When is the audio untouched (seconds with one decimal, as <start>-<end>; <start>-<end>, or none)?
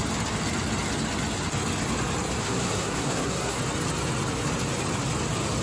0.0-2.4; 3.6-5.6